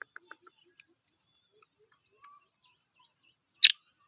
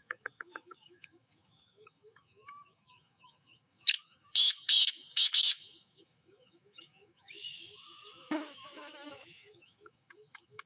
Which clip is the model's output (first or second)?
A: second